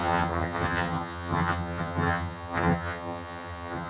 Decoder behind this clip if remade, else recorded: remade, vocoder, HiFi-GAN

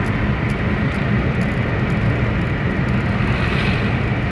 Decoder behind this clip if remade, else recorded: recorded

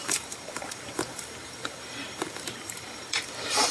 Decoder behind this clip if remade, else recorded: remade, vocoder, BigVGAN v2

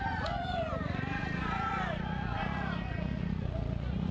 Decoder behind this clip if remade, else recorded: remade, vocoder, Vocos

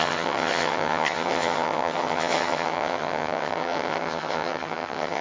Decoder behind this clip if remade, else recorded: remade, vocoder, HiFi-GAN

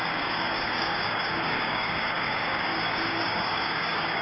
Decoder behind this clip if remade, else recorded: remade, codec, DAC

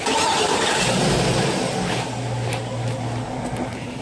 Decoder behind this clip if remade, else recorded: recorded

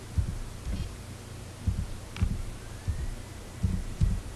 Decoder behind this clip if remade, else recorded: recorded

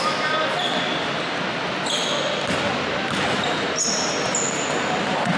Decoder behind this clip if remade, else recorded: recorded